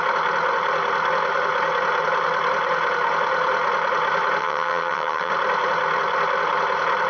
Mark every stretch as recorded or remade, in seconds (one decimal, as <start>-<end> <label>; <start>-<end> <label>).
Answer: 0.0-4.4 recorded; 4.4-5.3 remade; 5.3-7.1 recorded